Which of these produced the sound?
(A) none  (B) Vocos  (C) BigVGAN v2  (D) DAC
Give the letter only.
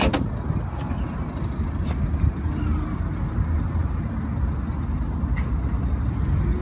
A